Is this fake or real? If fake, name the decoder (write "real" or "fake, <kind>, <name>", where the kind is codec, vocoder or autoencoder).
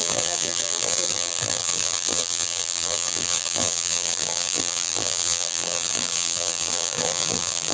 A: fake, vocoder, BigVGAN v2